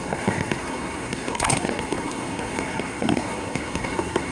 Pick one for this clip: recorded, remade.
remade